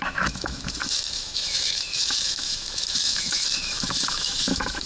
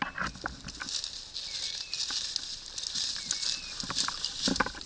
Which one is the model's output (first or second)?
first